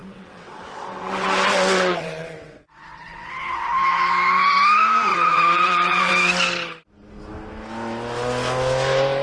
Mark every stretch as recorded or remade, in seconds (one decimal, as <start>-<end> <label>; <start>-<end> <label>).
0.0-3.7 remade; 3.7-5.1 recorded; 5.1-6.1 remade; 6.1-9.2 recorded

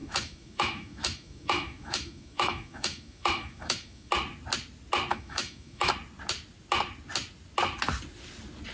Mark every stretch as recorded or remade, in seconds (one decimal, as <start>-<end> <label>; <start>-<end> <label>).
0.0-4.1 remade; 4.1-5.1 recorded; 5.1-5.9 remade; 5.9-8.7 recorded

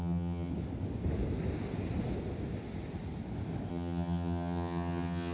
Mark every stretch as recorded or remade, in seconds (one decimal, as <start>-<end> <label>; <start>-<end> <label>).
0.0-0.5 remade; 0.5-3.7 recorded; 3.7-5.3 remade

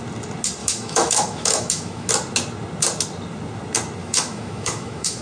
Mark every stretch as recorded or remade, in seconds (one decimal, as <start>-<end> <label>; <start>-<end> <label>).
0.0-0.6 recorded; 0.6-2.1 remade; 2.1-4.0 recorded; 4.0-5.2 remade

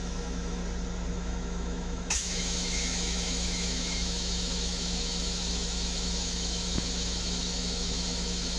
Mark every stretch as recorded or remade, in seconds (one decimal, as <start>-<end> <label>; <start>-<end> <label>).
0.0-0.6 remade; 0.6-1.1 recorded; 1.1-8.6 remade